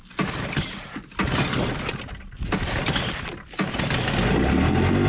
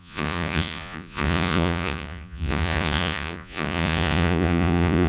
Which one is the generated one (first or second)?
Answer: second